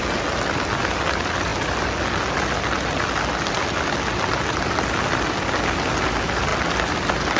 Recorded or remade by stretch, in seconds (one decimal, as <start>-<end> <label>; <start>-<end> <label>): 0.0-7.4 recorded